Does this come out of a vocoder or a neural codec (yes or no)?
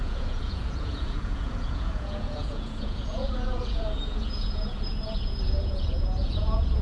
yes